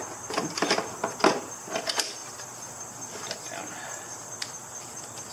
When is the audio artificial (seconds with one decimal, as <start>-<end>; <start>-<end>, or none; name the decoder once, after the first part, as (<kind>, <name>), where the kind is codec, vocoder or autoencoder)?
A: none